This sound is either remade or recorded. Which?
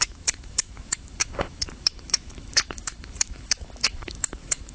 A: remade